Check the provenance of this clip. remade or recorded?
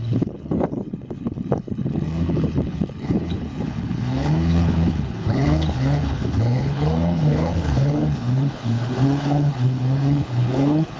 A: remade